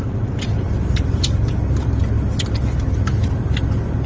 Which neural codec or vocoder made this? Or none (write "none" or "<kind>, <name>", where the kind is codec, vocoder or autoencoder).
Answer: none